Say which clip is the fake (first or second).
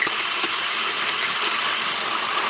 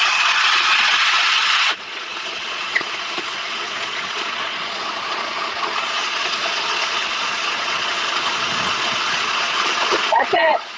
second